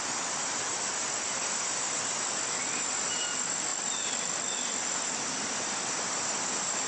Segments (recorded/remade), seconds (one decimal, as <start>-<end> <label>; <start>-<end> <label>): 0.0-6.9 recorded

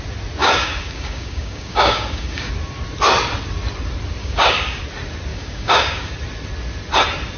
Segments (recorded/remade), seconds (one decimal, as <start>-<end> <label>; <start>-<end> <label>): 0.0-0.4 recorded; 0.4-2.5 remade; 2.5-4.2 recorded; 4.2-4.8 remade; 4.8-5.3 recorded; 5.3-6.1 remade; 6.1-7.4 recorded

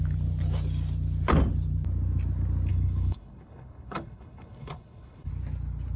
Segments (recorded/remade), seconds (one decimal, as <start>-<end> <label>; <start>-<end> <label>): 0.0-2.7 recorded; 2.7-5.3 remade; 5.3-6.0 recorded

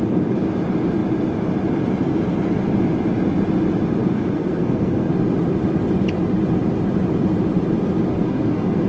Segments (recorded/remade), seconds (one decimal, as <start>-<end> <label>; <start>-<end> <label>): 0.0-4.0 recorded; 4.0-5.1 remade; 5.1-8.1 recorded; 8.1-8.9 remade